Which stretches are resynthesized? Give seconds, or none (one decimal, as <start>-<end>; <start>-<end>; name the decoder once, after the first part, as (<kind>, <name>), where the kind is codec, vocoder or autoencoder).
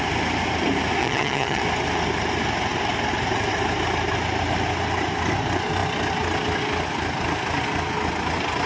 1.0-1.6 (vocoder, HiFi-GAN)